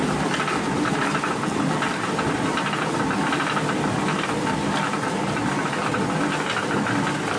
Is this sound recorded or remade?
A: recorded